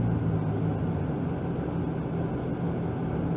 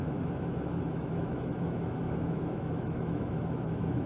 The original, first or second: first